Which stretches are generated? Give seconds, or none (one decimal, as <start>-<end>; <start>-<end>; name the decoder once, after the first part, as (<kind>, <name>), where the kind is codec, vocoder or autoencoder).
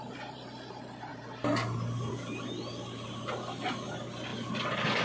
none